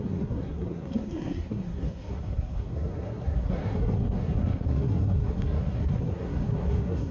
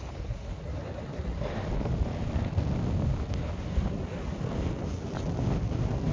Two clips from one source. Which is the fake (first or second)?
first